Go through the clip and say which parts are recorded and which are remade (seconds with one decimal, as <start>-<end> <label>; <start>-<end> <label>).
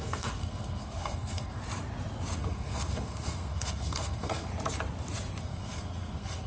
0.0-1.6 remade; 1.6-2.4 recorded; 2.4-4.5 remade; 4.5-5.4 recorded; 5.4-6.5 remade